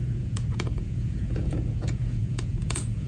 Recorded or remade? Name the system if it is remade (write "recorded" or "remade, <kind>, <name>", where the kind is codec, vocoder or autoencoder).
remade, vocoder, Vocos